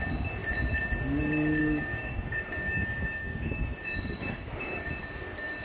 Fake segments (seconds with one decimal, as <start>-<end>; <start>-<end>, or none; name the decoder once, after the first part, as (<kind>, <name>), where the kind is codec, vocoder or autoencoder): 1.6-4.8 (codec, DAC)